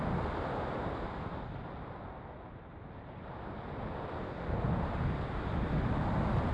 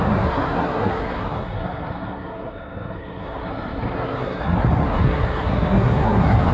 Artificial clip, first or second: second